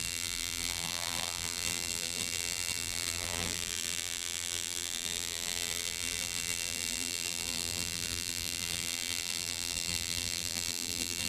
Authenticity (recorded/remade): remade